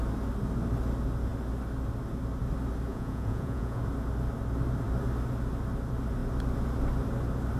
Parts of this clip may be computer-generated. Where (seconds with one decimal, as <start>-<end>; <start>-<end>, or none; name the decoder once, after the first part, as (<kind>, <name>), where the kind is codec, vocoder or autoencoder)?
2.9-3.8 (vocoder, Vocos)

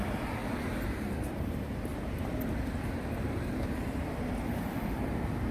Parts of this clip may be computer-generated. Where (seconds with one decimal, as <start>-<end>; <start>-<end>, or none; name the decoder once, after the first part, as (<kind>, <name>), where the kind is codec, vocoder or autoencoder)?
1.9-5.5 (vocoder, BigVGAN v2)

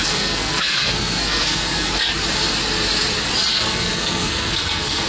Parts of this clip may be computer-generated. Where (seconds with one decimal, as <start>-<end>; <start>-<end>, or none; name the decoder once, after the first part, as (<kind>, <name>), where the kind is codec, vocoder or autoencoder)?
0.0-1.9 (codec, SNAC); 3.5-5.1

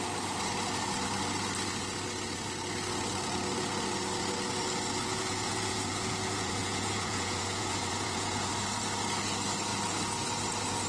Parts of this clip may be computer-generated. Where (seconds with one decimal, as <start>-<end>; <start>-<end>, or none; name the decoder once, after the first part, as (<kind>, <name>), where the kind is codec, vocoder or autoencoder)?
5.1-8.5 (vocoder, Vocos)

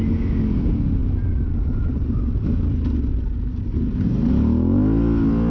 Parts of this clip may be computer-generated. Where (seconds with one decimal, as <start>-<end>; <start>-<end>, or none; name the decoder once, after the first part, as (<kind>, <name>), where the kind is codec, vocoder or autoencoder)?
none